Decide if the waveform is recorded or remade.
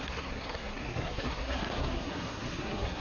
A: remade